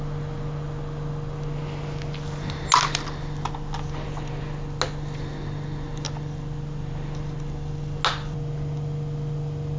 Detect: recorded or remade recorded